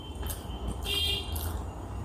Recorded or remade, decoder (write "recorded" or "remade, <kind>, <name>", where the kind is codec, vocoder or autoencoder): recorded